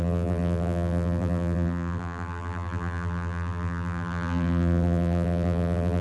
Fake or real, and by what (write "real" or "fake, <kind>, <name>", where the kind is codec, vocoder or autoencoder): fake, vocoder, BigVGAN v2